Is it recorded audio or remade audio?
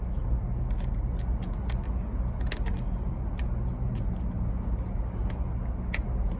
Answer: recorded